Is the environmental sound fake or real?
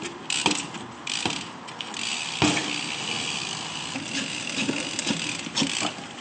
real